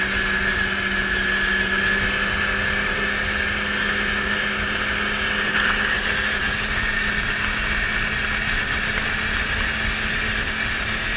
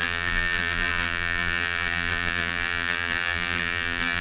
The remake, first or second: second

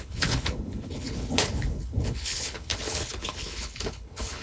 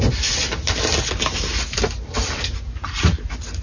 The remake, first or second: first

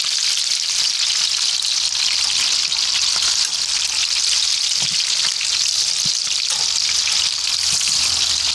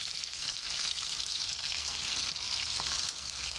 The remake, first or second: second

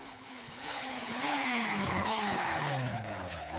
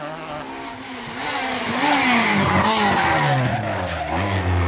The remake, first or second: first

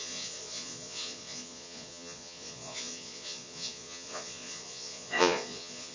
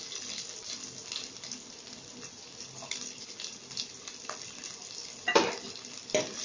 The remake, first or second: first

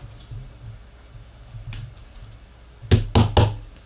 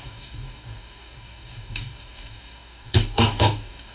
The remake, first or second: second